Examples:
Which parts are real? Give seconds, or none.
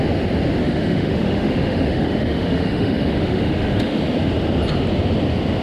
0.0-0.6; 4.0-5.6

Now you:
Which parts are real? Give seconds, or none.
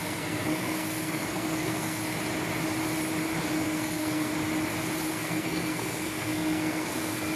2.0-3.6; 4.3-5.1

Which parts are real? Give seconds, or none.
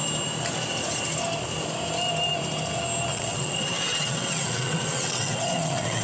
0.0-3.1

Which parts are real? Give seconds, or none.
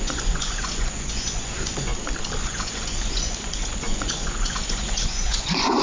1.9-2.4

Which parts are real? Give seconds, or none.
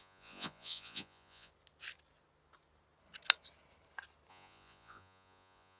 1.5-4.3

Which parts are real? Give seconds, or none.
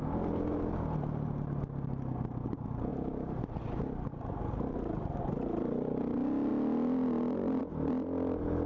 0.0-8.7